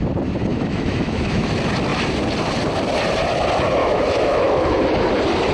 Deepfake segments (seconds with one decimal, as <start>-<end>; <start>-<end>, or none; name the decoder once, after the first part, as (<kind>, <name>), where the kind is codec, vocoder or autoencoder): 0.5-1.5 (autoencoder, DAC-VAE); 3.8-4.8